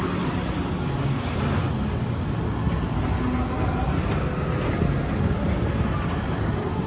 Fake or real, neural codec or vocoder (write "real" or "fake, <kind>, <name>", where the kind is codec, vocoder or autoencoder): real